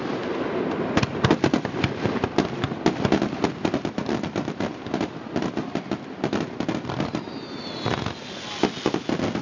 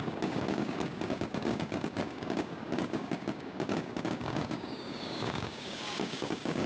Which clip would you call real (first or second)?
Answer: first